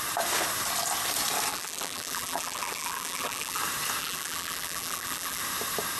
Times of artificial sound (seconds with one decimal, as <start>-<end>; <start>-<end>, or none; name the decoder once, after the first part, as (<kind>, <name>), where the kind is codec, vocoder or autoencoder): 1.5-3.6 (vocoder, BigVGAN v2); 4.0-5.4

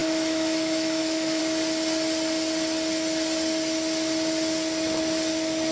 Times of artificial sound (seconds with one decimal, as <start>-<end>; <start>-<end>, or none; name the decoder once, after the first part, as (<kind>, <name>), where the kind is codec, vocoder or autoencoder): 0.0-1.4 (autoencoder, DAC-VAE)

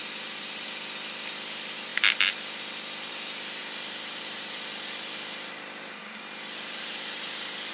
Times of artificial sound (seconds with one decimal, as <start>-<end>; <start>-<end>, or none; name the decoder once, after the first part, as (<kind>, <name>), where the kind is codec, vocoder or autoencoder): 0.0-1.9 (vocoder, BigVGAN v2); 3.1-3.6; 4.2-7.7

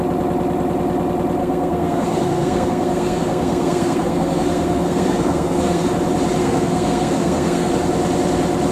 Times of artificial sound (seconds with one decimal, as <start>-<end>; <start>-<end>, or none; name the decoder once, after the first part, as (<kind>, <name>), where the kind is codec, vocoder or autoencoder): 1.4-5.9 (codec, SNAC); 6.4-7.7